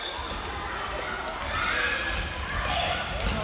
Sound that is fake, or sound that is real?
fake